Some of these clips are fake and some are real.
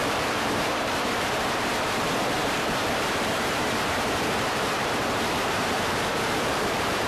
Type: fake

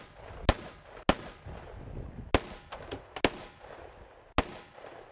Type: real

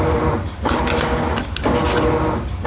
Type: real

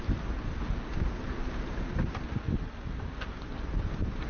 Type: real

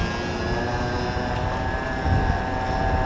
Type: real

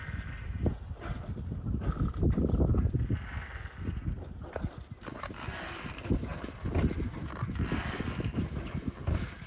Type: real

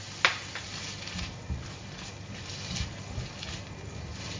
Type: real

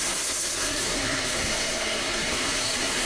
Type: fake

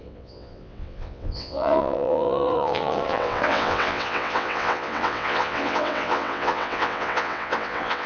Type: fake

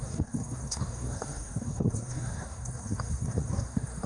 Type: fake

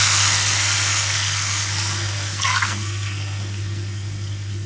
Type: fake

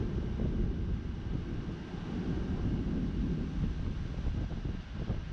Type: real